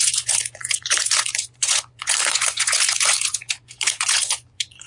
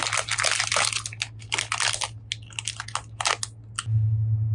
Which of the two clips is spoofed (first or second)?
first